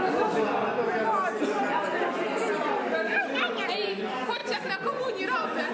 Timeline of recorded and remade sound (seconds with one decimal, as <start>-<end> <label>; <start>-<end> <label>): 0.0-0.7 remade; 0.7-2.0 recorded; 2.0-4.4 remade; 4.4-5.7 recorded